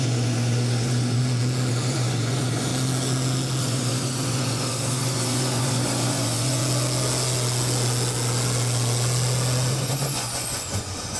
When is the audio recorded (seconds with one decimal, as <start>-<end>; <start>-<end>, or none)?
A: 1.2-1.7; 2.7-3.6; 6.6-9.7